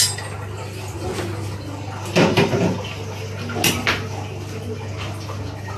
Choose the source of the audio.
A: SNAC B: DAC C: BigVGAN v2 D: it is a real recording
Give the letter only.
D